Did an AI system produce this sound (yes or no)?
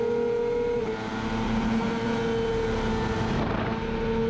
no